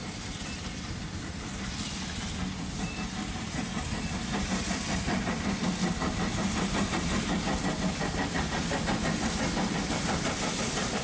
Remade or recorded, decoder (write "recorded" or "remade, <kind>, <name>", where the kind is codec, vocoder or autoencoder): recorded